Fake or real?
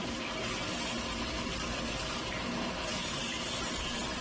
real